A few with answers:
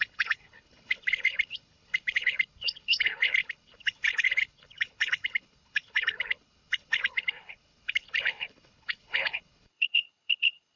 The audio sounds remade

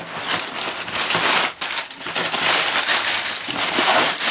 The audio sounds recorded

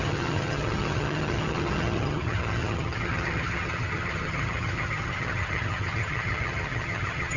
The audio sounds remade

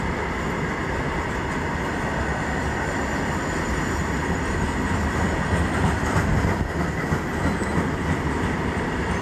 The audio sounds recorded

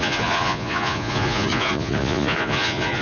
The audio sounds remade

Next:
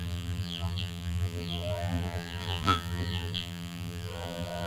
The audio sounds remade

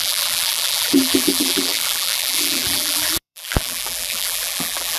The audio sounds remade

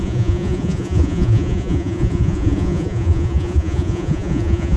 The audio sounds remade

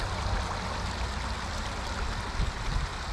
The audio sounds recorded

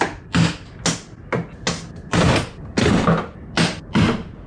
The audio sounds recorded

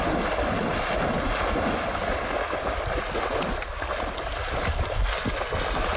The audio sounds recorded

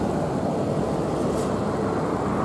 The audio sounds recorded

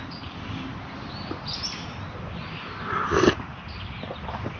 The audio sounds recorded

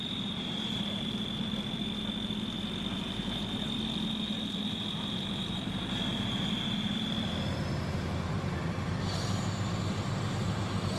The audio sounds remade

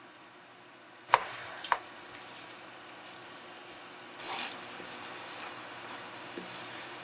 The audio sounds recorded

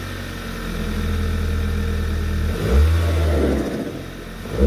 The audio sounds recorded